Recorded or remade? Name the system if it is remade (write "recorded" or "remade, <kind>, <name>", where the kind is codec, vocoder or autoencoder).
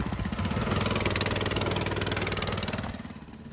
recorded